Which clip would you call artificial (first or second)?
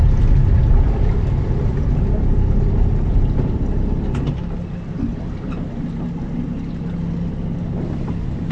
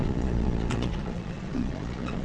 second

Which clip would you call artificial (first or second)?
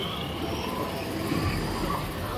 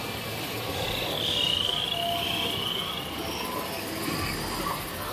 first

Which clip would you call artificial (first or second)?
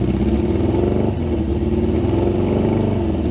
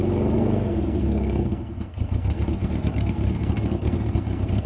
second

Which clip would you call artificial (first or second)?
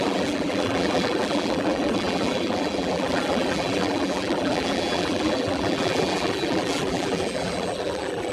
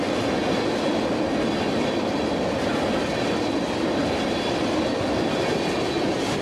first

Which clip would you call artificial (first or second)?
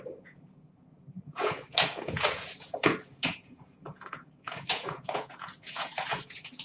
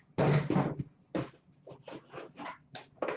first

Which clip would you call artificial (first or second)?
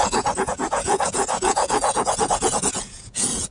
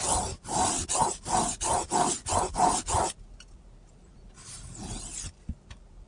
first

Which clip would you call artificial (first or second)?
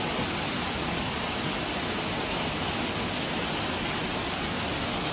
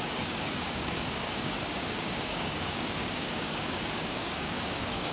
second